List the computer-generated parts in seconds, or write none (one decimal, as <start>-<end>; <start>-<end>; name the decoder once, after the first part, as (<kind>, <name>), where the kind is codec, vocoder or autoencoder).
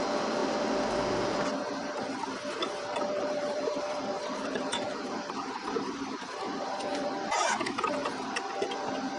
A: 2.6-7.1 (vocoder, BigVGAN v2); 8.0-9.2